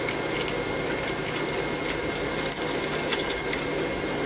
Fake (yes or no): no